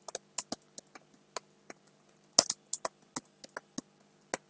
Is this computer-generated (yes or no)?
no